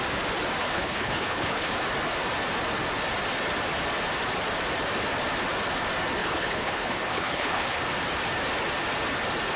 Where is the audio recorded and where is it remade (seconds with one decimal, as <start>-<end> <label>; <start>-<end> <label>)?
0.0-0.6 recorded; 0.6-1.7 remade; 1.7-6.2 recorded; 6.2-7.8 remade; 7.8-9.6 recorded